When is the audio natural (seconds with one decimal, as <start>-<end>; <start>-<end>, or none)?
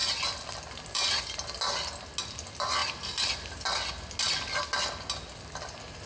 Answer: 0.0-6.1